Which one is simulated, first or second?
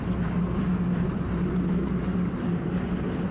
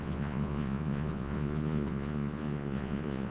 second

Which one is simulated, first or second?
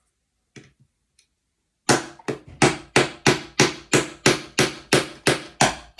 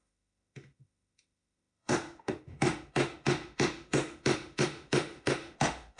second